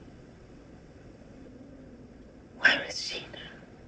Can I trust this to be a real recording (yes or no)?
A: no